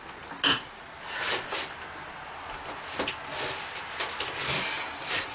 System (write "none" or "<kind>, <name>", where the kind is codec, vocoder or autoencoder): none